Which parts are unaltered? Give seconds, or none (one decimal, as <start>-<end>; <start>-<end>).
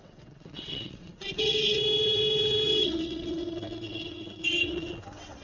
none